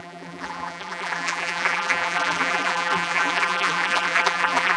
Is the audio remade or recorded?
remade